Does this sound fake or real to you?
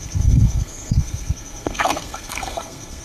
fake